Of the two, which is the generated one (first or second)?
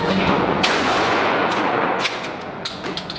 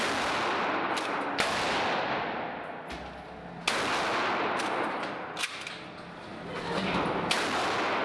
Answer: first